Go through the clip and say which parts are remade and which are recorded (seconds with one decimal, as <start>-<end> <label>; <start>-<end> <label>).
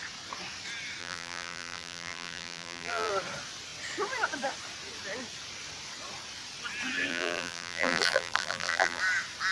0.0-1.0 recorded; 1.0-3.1 remade; 3.1-7.1 recorded; 7.1-9.0 remade; 9.0-9.5 recorded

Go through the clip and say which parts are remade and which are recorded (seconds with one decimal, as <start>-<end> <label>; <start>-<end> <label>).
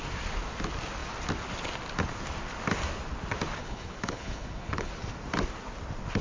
0.0-3.6 recorded; 3.6-4.9 remade; 4.9-6.2 recorded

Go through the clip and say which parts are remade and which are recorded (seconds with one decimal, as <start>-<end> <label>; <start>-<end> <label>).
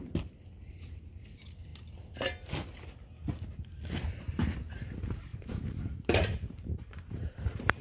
0.0-5.3 recorded; 5.3-7.8 remade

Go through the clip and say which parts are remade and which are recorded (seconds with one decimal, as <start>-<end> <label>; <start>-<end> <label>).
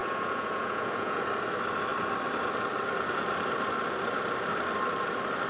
0.0-1.2 remade; 1.2-5.5 recorded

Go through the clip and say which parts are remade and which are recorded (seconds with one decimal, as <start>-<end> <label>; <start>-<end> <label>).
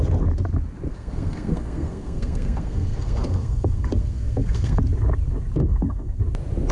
0.0-0.9 recorded; 0.9-4.8 remade; 4.8-5.6 recorded; 5.6-6.2 remade; 6.2-6.7 recorded